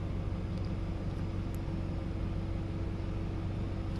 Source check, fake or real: real